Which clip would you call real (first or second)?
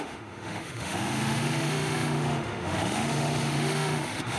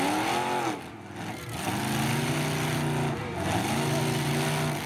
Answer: second